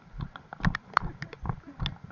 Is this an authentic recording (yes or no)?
yes